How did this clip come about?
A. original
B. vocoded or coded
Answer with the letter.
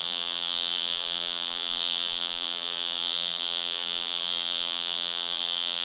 B